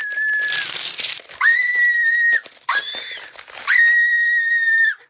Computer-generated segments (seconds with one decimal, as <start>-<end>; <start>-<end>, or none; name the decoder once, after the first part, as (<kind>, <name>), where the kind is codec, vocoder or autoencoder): none